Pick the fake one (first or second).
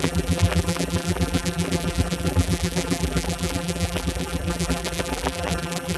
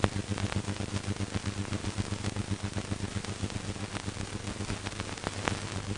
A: first